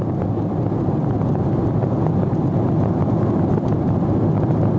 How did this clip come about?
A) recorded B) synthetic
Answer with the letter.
A